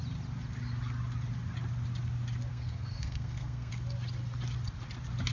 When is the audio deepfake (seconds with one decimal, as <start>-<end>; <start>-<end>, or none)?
2.5-3.7